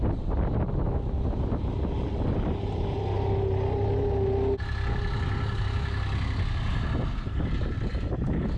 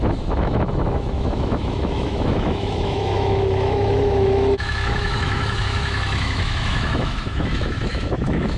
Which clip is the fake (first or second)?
second